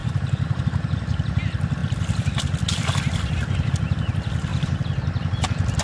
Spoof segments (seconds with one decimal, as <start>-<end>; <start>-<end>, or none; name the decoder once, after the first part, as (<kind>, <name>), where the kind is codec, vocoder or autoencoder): 0.0-0.6 (vocoder, BigVGAN v2)